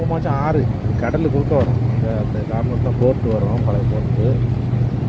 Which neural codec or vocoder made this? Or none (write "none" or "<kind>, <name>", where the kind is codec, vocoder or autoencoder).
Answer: none